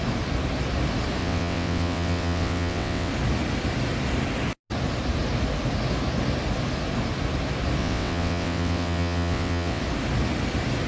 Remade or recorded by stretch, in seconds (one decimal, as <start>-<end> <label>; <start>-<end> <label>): 0.0-1.2 recorded; 1.2-3.1 remade; 3.1-7.8 recorded; 7.8-9.8 remade; 9.8-10.9 recorded